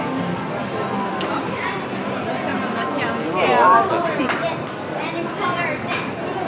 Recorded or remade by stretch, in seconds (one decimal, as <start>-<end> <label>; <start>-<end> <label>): 0.0-6.5 recorded